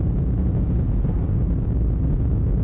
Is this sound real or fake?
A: fake